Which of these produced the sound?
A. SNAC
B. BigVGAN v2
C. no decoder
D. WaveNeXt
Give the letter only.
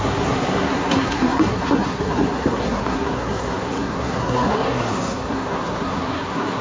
A